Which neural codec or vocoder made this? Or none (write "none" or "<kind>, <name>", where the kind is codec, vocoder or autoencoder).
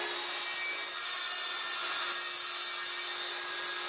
none